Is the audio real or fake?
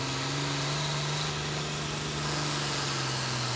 real